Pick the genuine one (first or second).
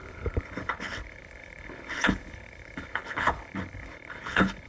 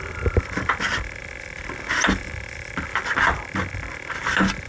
second